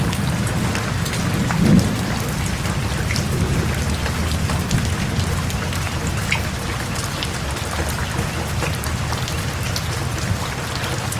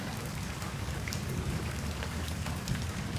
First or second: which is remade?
second